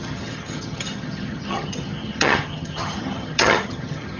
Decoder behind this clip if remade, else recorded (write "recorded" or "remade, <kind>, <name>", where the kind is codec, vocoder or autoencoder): remade, vocoder, HiFi-GAN